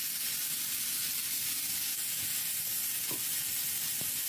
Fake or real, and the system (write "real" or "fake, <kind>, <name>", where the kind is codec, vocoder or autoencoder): real